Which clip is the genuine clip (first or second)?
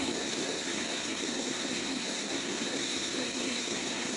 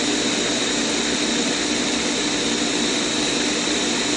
second